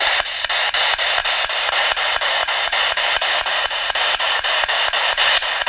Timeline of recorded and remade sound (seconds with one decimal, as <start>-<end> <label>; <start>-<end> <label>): 0.0-1.2 recorded; 1.2-1.7 remade; 1.7-2.4 recorded; 2.4-5.7 remade